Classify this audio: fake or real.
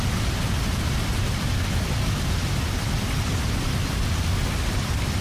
real